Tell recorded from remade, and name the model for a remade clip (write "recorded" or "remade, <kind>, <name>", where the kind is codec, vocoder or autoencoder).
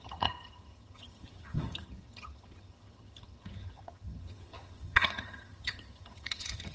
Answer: remade, vocoder, HiFi-GAN